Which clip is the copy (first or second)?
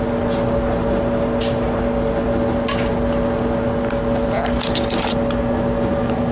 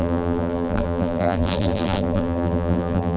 second